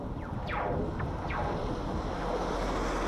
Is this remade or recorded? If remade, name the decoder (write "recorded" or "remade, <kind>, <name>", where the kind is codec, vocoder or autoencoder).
recorded